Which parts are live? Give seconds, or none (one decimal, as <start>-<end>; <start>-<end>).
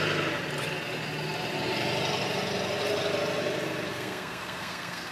0.0-3.9